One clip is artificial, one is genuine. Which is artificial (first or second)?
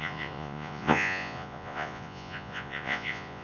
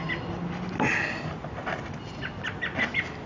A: first